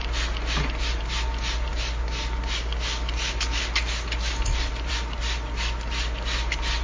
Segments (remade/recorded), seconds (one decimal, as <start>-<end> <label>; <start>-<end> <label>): 0.0-6.8 recorded